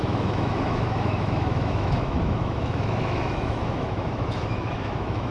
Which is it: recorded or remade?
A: remade